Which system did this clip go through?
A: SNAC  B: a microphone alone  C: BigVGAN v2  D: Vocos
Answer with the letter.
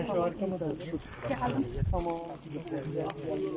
B